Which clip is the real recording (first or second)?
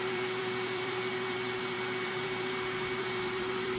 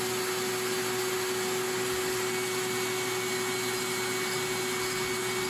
second